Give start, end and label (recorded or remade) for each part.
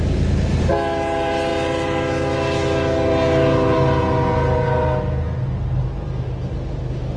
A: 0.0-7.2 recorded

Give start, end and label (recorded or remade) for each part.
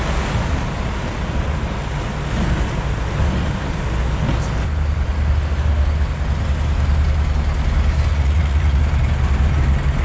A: 0.0-8.1 recorded; 8.1-8.8 remade; 8.8-10.0 recorded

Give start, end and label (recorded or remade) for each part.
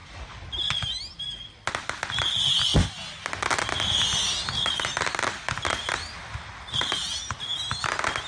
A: 0.0-8.3 recorded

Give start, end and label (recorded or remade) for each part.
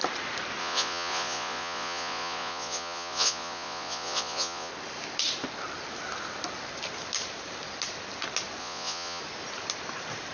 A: 0.0-0.6 recorded; 0.6-4.7 remade; 4.7-8.6 recorded; 8.6-9.2 remade; 9.2-10.3 recorded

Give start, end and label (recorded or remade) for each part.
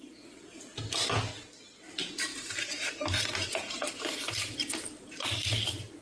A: 0.0-6.0 recorded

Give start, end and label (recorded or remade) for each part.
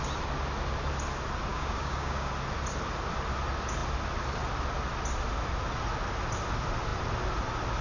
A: 0.0-1.5 recorded; 1.5-2.3 remade; 2.3-7.8 recorded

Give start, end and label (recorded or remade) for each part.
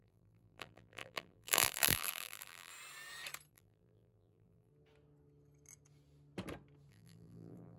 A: 0.0-2.7 remade; 2.7-3.5 recorded; 3.5-4.7 remade; 4.7-6.9 recorded; 6.9-7.8 remade